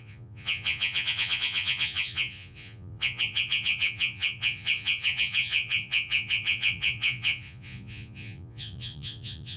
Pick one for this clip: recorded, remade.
remade